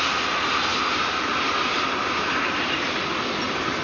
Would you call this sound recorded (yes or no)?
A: yes